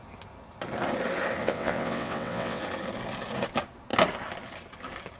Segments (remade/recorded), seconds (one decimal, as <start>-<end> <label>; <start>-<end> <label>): 0.0-1.4 recorded; 1.4-2.6 remade; 2.6-5.2 recorded